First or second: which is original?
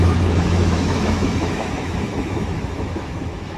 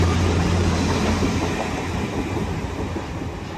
second